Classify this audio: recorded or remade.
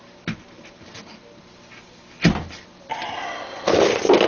recorded